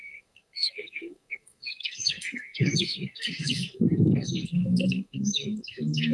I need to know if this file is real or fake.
fake